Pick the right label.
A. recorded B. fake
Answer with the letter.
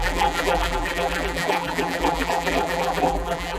B